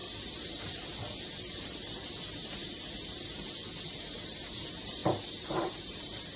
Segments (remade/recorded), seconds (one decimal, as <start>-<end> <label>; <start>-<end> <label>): 0.0-6.4 remade